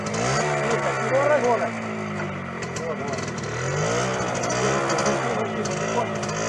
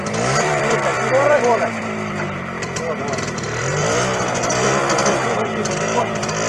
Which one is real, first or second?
first